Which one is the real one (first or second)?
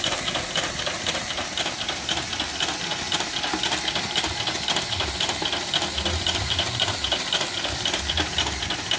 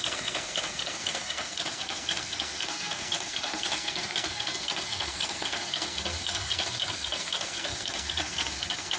first